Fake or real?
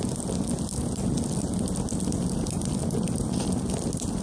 real